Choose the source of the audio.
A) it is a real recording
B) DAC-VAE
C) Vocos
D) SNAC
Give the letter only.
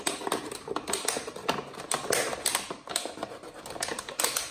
A